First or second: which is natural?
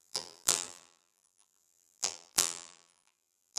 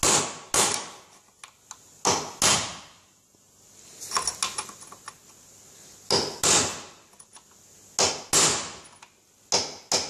second